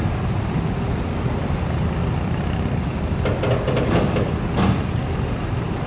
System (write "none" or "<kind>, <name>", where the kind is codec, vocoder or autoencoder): none